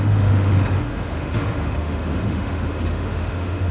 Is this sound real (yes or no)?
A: no